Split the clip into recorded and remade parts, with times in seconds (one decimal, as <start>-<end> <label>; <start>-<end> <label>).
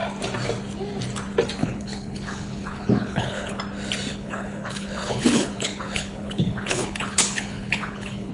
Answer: 0.0-1.6 recorded; 1.6-3.6 remade; 3.6-4.1 recorded; 4.1-8.3 remade